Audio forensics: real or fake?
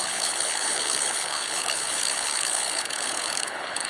fake